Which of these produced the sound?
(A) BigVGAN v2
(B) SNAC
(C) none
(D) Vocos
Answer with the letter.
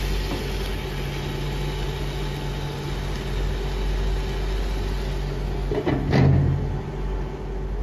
C